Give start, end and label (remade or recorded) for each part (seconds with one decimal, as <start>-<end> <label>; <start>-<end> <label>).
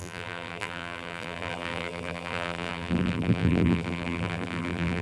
0.0-5.0 remade